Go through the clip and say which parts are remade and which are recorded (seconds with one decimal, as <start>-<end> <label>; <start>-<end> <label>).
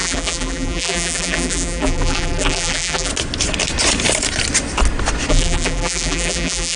0.0-3.1 remade; 3.1-5.3 recorded; 5.3-6.8 remade